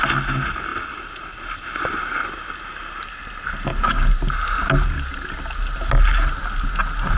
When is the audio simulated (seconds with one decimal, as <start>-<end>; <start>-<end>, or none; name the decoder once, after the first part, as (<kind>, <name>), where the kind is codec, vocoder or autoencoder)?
none